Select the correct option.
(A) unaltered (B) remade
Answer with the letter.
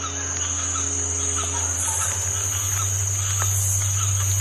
A